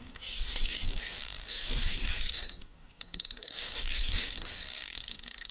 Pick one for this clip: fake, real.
fake